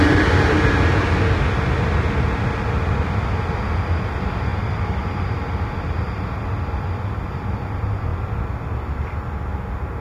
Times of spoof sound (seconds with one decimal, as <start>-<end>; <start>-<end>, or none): none

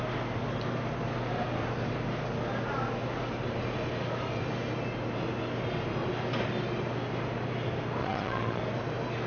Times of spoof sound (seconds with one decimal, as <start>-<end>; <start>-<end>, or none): 8.0-8.6

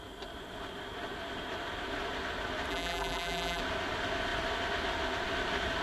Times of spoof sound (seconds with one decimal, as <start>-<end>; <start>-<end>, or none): 2.7-3.6

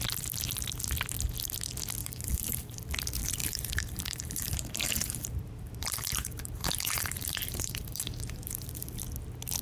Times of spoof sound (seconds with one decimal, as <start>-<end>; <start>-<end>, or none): 2.0-2.8; 3.4-8.5

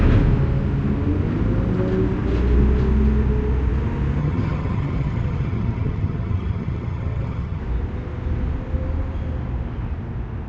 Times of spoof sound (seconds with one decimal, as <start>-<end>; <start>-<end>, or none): 4.2-7.6

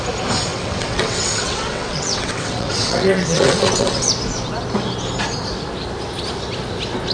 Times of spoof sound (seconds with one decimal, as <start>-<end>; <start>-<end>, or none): 0.5-4.1

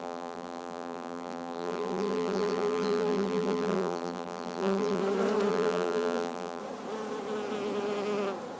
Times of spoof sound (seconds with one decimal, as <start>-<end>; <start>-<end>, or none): 0.0-5.0; 5.5-6.6

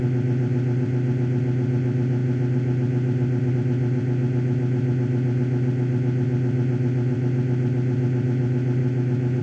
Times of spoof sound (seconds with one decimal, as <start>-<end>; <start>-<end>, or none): 8.8-9.4